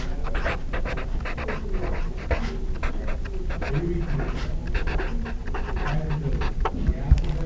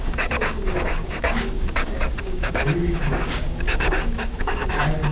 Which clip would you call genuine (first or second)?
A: first